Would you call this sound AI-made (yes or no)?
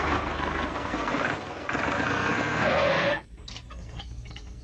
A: yes